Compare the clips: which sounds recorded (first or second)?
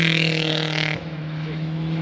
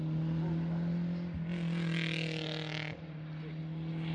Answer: second